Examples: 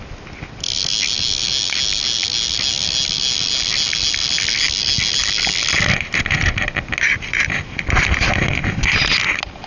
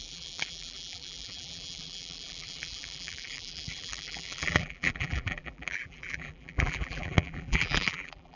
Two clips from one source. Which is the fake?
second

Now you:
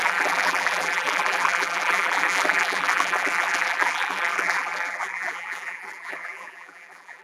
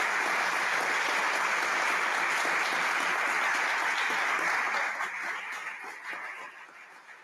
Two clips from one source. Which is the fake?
first